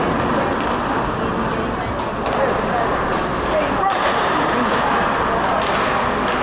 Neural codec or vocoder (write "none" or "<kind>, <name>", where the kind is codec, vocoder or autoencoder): none